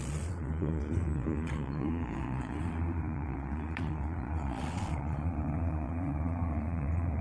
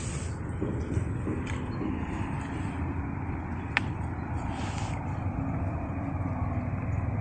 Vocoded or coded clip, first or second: first